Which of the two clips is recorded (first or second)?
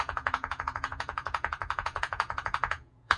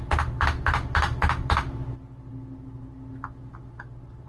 second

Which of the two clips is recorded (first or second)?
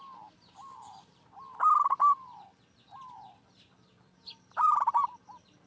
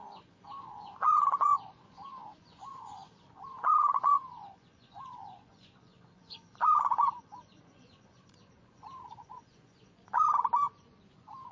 first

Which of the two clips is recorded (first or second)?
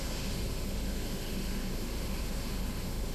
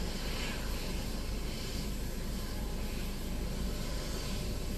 second